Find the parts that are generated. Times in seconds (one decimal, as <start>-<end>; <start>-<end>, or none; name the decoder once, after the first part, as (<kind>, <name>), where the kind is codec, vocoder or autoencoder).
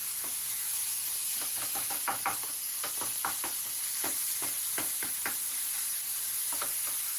0.0-1.9 (autoencoder, DAC-VAE)